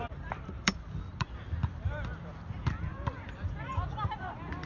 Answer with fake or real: fake